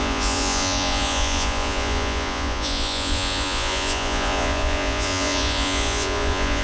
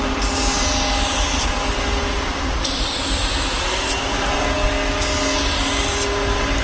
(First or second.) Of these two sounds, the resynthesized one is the first